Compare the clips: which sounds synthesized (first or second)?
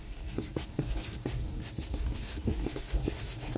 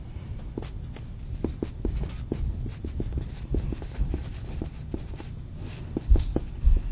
first